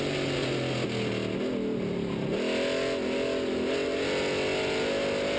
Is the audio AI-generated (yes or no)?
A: no